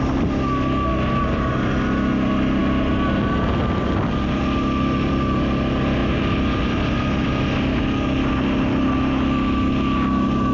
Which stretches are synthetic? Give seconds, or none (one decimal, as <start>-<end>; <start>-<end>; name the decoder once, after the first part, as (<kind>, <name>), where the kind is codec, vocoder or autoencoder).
none